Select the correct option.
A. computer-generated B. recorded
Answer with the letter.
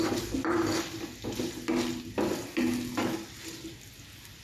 B